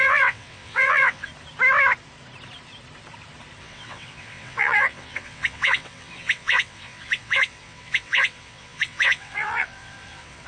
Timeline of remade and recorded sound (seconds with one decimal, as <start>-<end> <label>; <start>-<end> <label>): 0.0-1.3 remade; 1.3-3.6 recorded; 3.6-10.5 remade